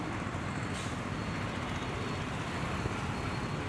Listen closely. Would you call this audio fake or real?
real